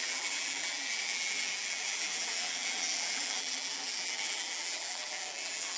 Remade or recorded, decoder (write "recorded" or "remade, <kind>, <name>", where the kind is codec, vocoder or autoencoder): remade, vocoder, BigVGAN v2